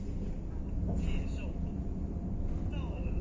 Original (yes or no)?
yes